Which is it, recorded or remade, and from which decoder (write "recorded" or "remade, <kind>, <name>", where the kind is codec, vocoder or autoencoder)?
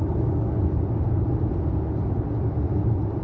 recorded